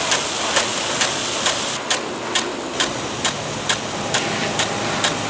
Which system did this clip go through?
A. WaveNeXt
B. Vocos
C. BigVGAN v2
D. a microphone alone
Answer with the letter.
D